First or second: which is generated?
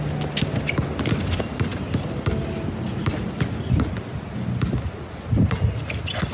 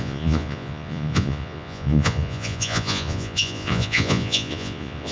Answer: second